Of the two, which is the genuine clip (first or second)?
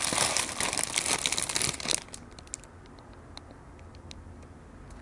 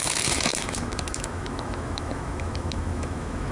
first